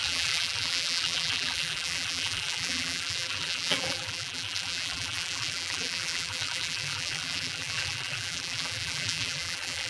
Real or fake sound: fake